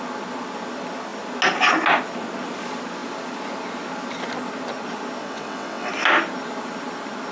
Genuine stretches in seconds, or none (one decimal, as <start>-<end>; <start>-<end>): 0.0-5.2; 5.9-7.3